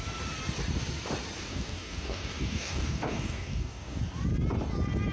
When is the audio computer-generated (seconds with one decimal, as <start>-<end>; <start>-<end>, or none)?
1.5-4.0